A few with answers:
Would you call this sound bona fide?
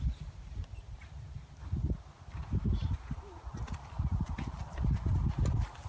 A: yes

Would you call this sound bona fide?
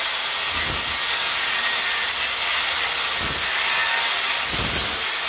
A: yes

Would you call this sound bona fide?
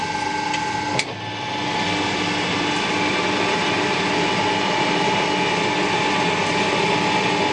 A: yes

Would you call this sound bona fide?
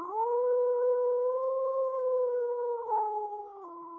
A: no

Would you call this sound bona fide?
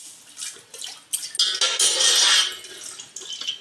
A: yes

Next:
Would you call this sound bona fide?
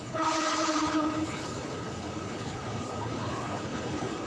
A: no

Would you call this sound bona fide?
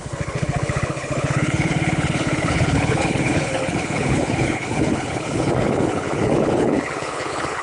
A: no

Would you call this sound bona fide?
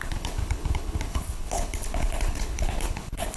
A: no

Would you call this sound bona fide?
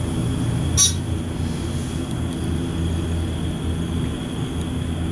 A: yes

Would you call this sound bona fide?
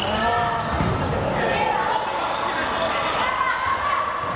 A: yes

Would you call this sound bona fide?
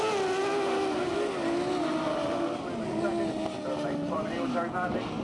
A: yes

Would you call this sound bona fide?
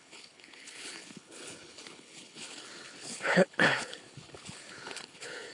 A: no